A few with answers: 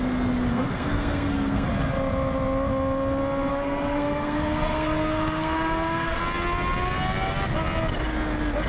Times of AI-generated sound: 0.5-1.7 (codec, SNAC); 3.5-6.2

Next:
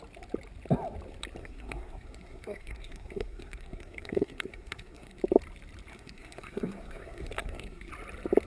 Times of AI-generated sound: 1.4-5.2 (codec, SNAC); 5.9-7.9

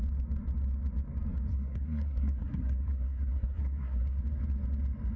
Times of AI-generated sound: 1.5-4.2 (codec, SNAC)

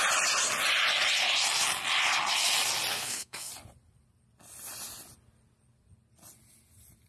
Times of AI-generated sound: 2.9-3.5 (codec, SNAC)

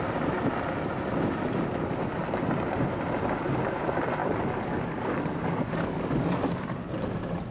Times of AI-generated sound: 4.2-6.4 (codec, DAC)

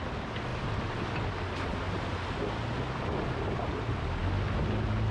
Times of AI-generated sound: none